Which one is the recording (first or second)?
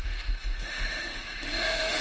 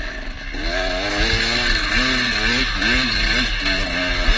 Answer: second